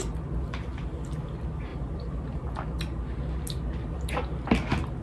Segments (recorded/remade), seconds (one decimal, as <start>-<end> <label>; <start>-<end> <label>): 0.0-1.7 recorded; 1.7-2.5 remade; 2.5-5.0 recorded